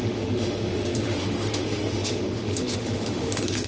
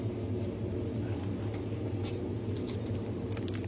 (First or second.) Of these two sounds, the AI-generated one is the first